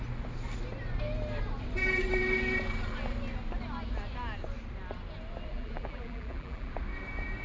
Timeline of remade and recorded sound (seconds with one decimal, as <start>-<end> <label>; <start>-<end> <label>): 0.0-5.5 recorded; 5.5-6.7 remade; 6.7-7.4 recorded